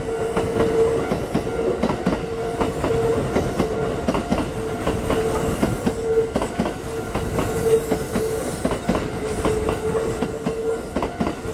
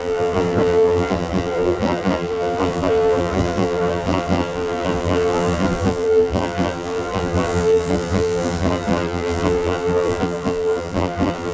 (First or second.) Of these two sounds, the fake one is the second